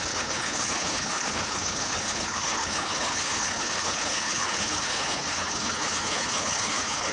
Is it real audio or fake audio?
fake